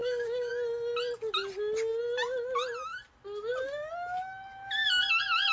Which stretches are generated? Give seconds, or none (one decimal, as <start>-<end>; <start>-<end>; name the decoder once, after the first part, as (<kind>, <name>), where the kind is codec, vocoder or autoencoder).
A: 0.0-0.5 (codec, DAC)